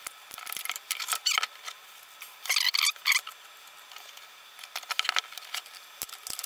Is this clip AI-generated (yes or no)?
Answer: no